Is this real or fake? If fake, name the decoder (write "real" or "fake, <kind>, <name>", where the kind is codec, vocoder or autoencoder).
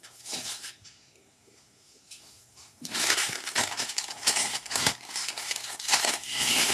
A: fake, codec, SNAC